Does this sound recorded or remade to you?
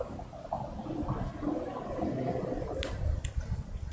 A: recorded